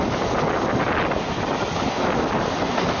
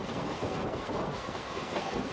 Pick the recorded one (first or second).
first